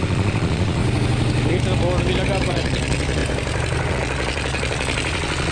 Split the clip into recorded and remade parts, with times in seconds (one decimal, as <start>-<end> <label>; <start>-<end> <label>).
0.0-0.8 remade; 0.8-2.5 recorded; 2.5-3.2 remade; 3.2-3.9 recorded; 3.9-5.5 remade